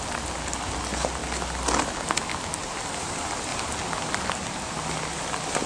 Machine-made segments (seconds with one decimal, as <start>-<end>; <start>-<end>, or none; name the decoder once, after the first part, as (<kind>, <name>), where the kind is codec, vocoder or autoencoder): none

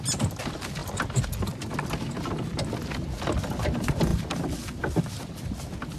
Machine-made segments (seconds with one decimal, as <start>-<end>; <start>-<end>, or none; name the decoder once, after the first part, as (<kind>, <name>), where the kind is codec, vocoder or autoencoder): none

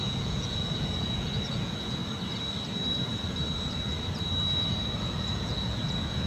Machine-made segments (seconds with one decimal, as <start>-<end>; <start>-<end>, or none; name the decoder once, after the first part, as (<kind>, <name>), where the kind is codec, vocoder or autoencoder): 0.0-2.0 (vocoder, Vocos); 5.0-6.3

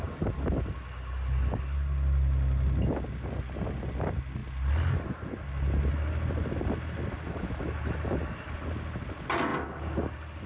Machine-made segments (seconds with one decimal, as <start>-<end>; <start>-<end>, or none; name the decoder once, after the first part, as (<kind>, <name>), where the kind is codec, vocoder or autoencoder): none